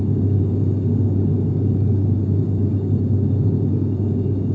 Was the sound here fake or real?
fake